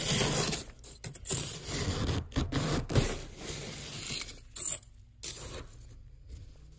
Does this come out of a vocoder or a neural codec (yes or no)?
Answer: no